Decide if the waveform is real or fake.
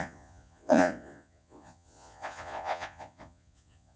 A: fake